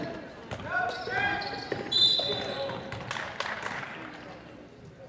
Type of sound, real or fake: real